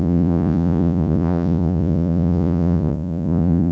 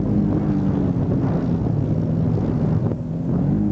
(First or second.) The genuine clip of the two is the second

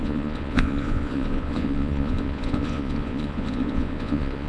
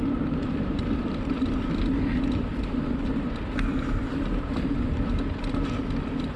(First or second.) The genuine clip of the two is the second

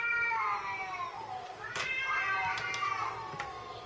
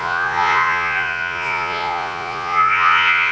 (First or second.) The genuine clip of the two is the first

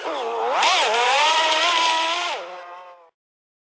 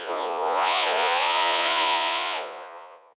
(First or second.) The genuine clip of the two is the first